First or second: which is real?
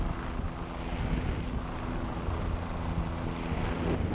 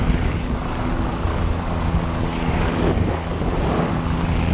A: first